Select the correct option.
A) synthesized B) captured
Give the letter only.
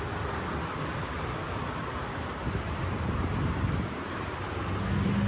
B